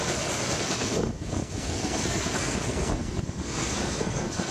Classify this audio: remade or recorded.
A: remade